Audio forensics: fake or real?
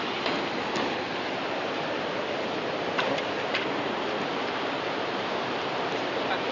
real